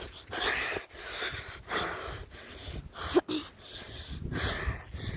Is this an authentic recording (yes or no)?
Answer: yes